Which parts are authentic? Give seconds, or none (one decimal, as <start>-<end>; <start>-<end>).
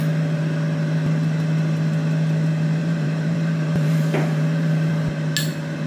0.0-2.8; 4.9-5.9